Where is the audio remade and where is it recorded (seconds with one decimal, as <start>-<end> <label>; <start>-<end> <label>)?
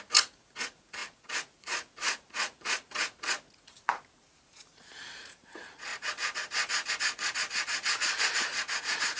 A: 0.0-5.9 remade; 5.9-6.9 recorded; 6.9-9.2 remade